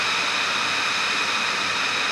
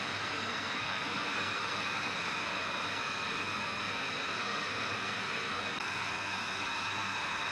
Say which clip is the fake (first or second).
second